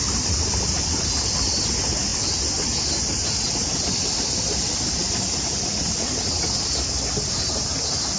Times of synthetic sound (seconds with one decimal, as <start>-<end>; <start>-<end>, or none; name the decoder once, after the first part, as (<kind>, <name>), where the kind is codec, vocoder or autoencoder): none